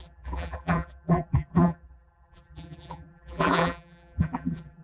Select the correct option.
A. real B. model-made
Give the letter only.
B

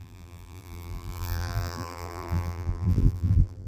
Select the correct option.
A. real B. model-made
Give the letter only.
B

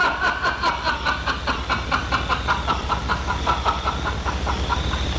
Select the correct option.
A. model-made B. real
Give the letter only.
B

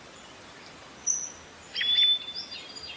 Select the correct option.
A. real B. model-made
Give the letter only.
A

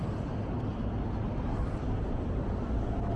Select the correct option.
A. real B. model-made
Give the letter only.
A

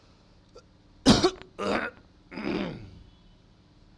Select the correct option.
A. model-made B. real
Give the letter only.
B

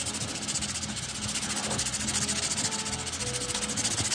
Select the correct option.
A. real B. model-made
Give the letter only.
A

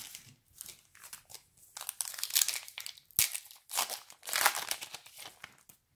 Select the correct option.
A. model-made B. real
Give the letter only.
B